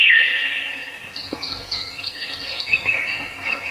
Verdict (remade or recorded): remade